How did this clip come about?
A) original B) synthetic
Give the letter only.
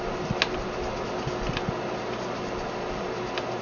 A